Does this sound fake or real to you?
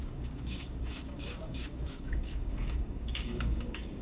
fake